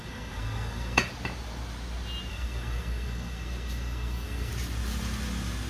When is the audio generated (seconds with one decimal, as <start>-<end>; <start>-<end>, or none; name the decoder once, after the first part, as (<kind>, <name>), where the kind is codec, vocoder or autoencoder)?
0.0-1.1 (codec, SNAC); 2.3-4.5